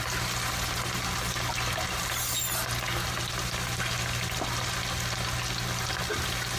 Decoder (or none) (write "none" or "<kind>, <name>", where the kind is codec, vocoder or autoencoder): none